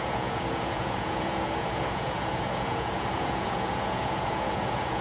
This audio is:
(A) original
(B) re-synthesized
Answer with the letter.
B